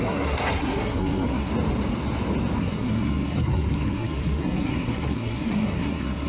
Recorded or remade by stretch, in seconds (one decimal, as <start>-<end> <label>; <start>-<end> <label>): 0.0-1.5 remade; 1.5-2.6 recorded; 2.6-6.3 remade